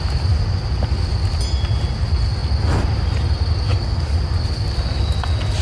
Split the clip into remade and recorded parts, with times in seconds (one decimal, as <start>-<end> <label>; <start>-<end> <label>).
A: 0.0-3.7 recorded; 3.7-4.2 remade; 4.2-5.6 recorded